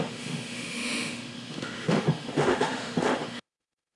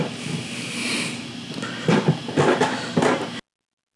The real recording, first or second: second